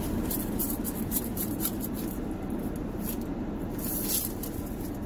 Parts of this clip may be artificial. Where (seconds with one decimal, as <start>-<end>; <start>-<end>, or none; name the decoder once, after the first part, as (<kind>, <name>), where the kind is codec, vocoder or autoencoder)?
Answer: none

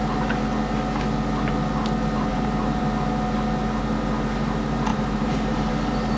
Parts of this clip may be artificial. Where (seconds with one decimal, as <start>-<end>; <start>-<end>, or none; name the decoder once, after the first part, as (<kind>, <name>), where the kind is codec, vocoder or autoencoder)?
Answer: 2.3-2.8 (vocoder, BigVGAN v2); 4.9-5.7

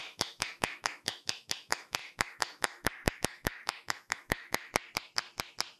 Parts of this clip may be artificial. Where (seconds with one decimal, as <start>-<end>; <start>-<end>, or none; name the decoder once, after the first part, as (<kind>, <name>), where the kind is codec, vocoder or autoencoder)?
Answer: 0.0-4.7 (autoencoder, DAC-VAE)

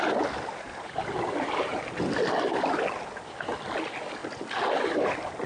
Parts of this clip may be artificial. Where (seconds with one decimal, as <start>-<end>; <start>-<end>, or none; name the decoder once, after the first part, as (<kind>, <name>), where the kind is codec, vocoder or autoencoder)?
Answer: none

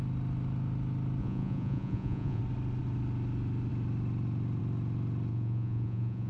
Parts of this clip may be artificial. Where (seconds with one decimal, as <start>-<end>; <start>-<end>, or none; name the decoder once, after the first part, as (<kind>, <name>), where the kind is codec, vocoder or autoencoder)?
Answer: 1.2-2.4 (vocoder, Vocos); 5.3-6.3

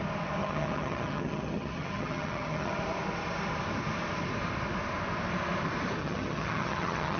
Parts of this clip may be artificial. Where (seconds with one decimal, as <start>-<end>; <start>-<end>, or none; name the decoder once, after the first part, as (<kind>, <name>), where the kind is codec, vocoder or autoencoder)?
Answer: 0.4-2.7 (vocoder, HiFi-GAN); 6.0-7.2

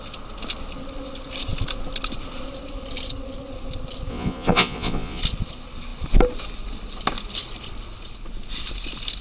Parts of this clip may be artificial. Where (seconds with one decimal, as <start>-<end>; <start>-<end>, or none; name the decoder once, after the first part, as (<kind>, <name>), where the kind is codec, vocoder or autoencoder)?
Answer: 4.1-5.2 (vocoder, Vocos)

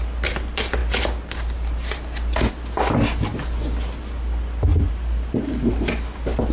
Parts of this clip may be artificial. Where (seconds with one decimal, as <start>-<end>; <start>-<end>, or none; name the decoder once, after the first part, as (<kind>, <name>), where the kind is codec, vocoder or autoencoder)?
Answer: 4.7-5.7 (vocoder, BigVGAN v2)